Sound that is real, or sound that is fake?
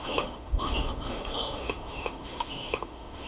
fake